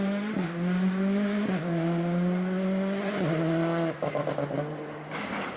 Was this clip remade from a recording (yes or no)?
no